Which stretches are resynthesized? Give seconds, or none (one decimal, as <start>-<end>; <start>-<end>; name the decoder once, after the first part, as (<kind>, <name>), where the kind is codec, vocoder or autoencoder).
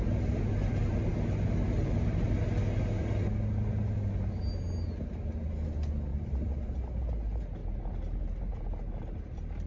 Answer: 6.1-6.8 (vocoder, BigVGAN v2); 7.6-9.7